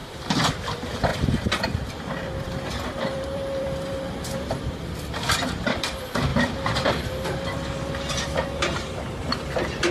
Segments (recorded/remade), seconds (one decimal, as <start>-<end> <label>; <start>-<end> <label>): 0.0-9.9 remade